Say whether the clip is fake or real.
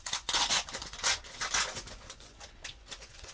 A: fake